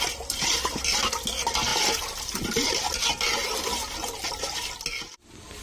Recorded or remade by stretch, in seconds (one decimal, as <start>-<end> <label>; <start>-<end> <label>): 0.0-5.6 recorded

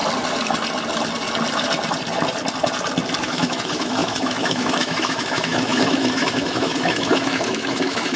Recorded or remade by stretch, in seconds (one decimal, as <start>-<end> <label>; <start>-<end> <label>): 0.0-3.2 recorded; 3.2-8.2 remade

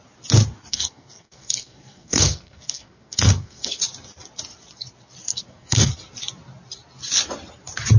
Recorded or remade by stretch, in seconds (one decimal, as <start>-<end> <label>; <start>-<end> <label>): 0.0-0.7 recorded; 0.7-3.8 remade; 3.8-5.3 recorded; 5.3-5.9 remade; 5.9-8.0 recorded